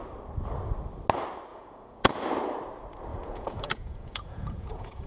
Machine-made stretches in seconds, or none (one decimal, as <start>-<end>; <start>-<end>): 1.5-2.3; 3.1-5.1